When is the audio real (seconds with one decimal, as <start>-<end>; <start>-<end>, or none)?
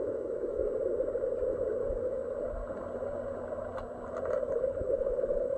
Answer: 0.6-1.8; 2.2-4.7